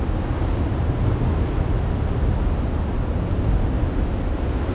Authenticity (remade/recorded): recorded